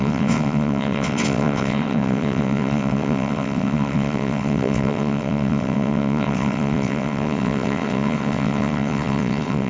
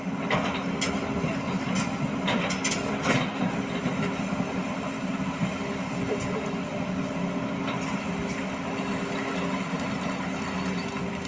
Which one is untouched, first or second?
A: second